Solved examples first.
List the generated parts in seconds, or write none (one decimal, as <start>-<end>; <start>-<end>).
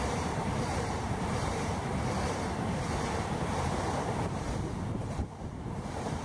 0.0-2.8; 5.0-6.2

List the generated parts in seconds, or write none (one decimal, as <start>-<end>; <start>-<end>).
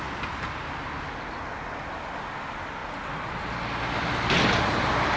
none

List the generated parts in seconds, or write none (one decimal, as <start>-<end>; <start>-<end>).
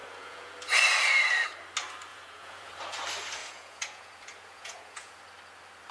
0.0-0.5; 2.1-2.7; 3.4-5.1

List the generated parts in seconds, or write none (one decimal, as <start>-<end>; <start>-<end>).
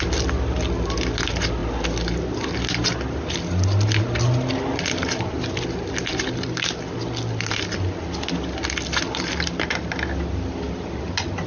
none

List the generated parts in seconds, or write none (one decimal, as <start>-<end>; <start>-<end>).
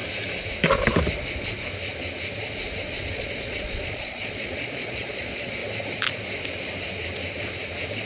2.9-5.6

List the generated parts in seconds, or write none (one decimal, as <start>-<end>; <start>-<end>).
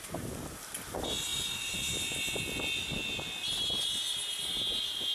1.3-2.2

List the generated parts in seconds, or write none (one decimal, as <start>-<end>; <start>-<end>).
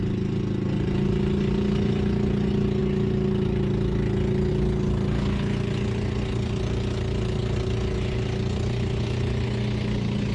none